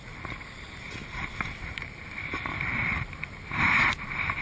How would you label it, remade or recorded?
remade